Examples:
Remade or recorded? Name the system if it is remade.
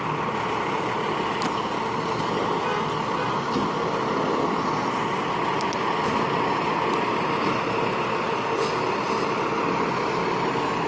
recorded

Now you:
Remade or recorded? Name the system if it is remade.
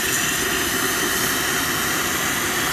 recorded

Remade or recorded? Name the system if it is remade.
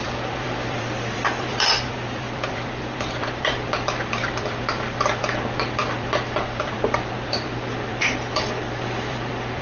remade, vocoder, BigVGAN v2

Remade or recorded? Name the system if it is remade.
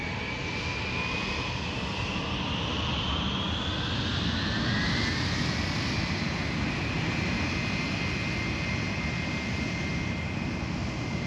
recorded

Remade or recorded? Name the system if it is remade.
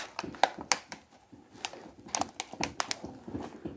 recorded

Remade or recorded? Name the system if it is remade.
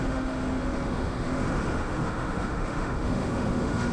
remade, autoencoder, DAC-VAE